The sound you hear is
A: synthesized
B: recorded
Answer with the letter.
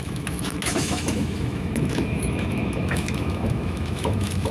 A